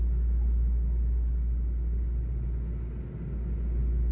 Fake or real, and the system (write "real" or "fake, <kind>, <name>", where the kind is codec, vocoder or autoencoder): real